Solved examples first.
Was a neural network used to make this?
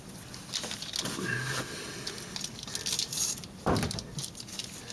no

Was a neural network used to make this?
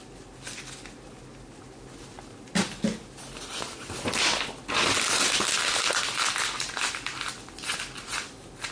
no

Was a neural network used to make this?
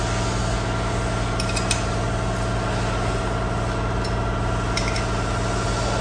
no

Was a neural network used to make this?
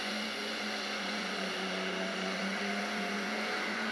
yes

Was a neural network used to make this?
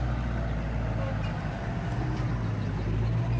no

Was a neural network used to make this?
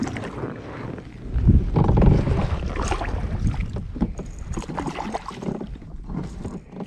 no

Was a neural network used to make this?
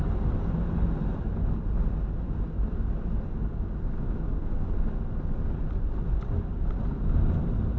no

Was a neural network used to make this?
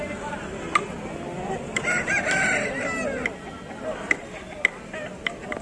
no